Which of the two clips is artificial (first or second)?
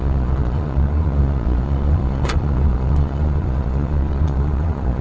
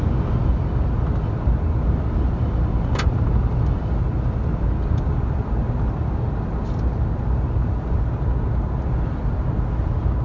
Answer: first